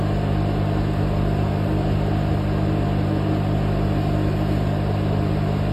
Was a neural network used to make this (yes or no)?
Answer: no